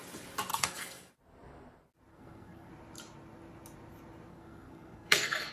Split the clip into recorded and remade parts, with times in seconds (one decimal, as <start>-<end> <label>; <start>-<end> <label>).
0.0-0.5 recorded; 0.5-1.1 remade; 1.1-2.1 recorded; 2.1-2.7 remade; 2.7-4.3 recorded; 4.3-5.5 remade